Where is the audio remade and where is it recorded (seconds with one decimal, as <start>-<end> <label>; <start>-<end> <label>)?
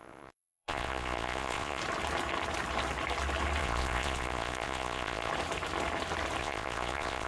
0.0-1.8 remade; 1.8-3.6 recorded; 3.6-5.3 remade; 5.3-6.4 recorded; 6.4-7.3 remade